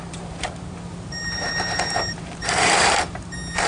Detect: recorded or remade remade